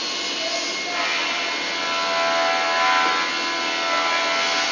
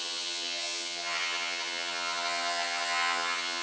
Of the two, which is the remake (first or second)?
second